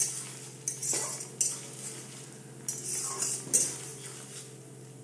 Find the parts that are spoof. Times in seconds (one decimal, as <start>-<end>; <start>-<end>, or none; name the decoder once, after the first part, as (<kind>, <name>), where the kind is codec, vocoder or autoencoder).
none